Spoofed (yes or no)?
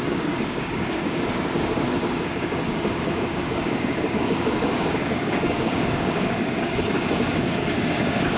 yes